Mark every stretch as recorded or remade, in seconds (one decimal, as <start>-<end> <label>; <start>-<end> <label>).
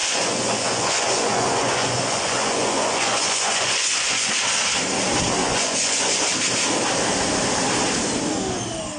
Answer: 0.0-4.3 remade; 4.3-5.4 recorded; 5.4-6.3 remade; 6.3-9.0 recorded